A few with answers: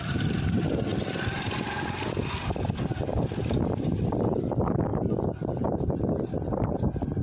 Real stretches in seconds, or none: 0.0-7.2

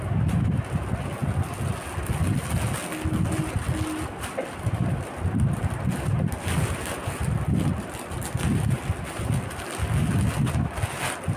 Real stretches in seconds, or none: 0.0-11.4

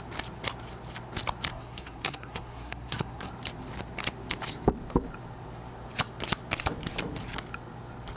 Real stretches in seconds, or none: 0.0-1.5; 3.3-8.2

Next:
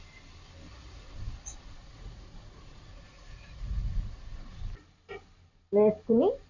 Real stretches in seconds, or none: 0.0-0.7; 4.6-6.5

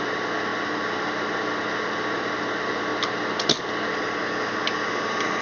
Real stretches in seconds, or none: 0.0-5.4

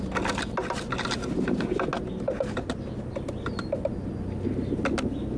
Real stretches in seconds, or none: 0.0-5.4